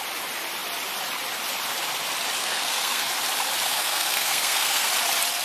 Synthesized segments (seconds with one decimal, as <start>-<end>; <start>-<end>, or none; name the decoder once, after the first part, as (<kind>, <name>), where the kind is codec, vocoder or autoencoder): 2.4-3.1 (codec, SNAC); 3.7-4.9